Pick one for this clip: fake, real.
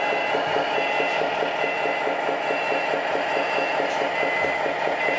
real